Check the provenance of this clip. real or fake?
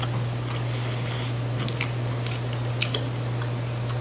real